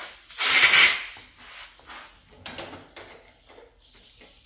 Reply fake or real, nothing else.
real